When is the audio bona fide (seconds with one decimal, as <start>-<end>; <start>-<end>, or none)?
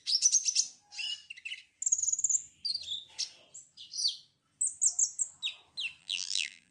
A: 0.0-6.0